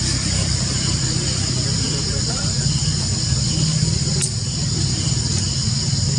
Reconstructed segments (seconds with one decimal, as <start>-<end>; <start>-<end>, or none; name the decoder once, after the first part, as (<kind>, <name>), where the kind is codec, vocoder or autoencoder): none